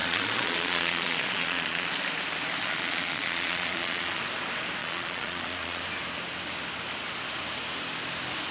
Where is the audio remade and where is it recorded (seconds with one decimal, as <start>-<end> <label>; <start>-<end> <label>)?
0.0-1.9 remade; 1.9-2.6 recorded; 2.6-4.2 remade; 4.2-4.8 recorded; 4.8-5.8 remade; 5.8-8.5 recorded